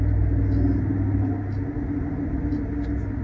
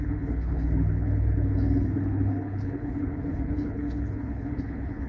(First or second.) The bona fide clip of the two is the first